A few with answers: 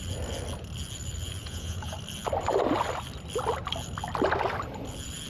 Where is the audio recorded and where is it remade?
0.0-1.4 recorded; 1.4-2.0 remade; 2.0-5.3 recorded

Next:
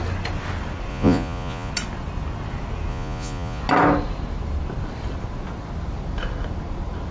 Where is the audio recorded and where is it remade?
0.0-0.9 recorded; 0.9-1.7 remade; 1.7-2.9 recorded; 2.9-3.6 remade; 3.6-7.1 recorded

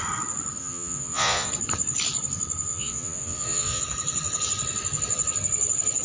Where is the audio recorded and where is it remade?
0.0-0.6 recorded; 0.6-1.5 remade; 1.5-2.7 recorded; 2.7-3.8 remade; 3.8-6.0 recorded